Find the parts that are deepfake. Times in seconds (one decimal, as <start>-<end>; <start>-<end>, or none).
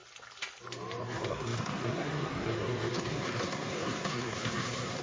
1.0-5.0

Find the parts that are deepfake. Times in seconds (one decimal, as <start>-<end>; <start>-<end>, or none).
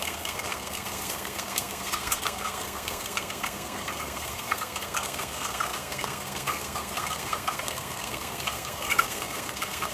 0.0-9.9